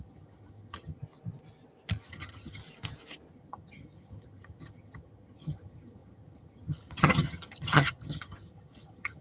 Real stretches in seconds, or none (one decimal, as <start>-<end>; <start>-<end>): 1.0-2.1; 2.6-3.3